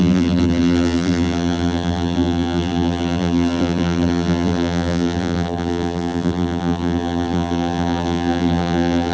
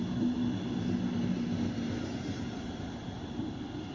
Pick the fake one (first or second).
first